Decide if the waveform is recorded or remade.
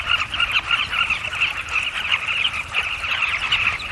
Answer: recorded